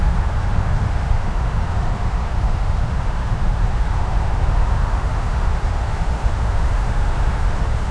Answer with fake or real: fake